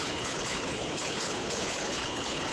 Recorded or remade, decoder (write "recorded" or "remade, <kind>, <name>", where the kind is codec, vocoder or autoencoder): remade, codec, HILCodec